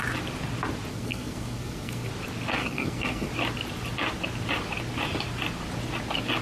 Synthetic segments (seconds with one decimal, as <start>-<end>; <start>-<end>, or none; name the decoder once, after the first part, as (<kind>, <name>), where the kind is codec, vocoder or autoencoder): 0.9-2.1 (codec, SNAC); 2.6-3.3